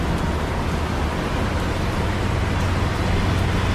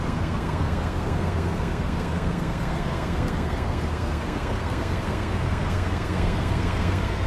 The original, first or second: first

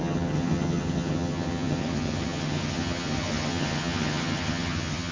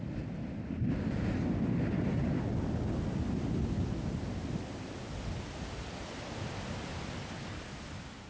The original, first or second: second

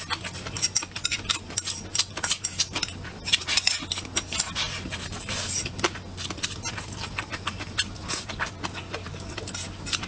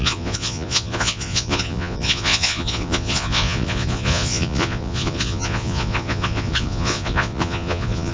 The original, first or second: first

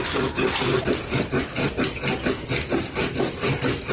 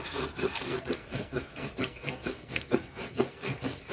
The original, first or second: first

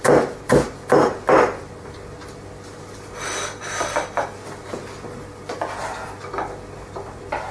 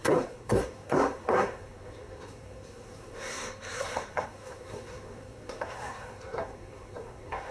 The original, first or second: first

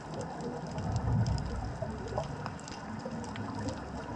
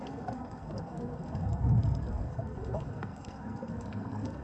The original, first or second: first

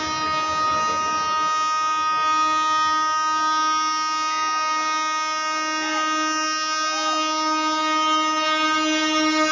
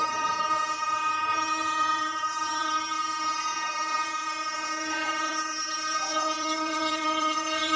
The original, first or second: first